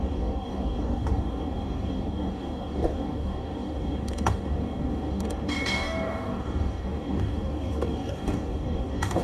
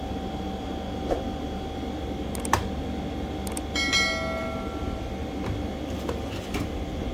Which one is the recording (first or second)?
second